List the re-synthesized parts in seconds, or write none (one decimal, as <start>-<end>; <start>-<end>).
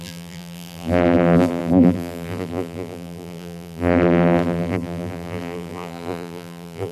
0.0-6.9